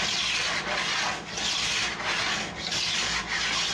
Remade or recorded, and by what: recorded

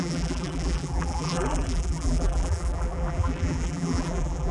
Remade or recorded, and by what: remade, vocoder, BigVGAN v2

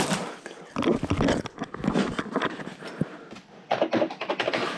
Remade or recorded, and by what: recorded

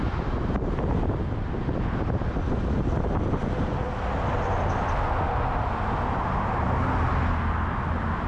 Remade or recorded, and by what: recorded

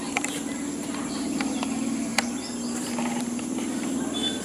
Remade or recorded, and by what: remade, vocoder, BigVGAN v2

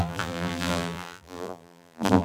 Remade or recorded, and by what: remade, vocoder, BigVGAN v2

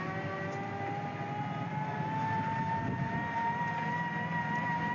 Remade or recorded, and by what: recorded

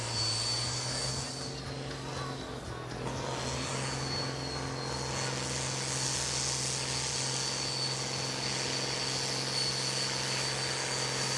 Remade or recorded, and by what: recorded